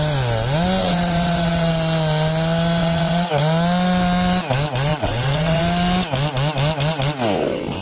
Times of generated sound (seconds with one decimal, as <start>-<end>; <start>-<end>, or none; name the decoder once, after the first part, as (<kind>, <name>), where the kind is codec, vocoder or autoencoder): 0.8-1.7 (vocoder, WaveNeXt); 2.8-3.3; 4.9-5.6